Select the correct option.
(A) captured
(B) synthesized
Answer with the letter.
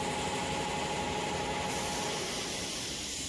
A